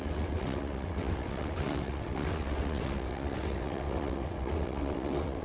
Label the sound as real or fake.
fake